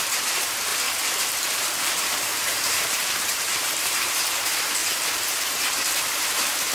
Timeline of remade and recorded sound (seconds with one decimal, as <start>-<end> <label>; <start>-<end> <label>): 0.0-0.7 remade; 0.7-1.2 recorded; 1.2-6.7 remade